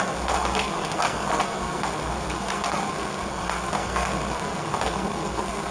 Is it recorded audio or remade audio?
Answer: remade